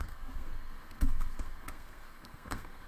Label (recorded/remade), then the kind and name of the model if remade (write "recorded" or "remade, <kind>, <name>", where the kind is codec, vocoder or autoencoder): remade, codec, SNAC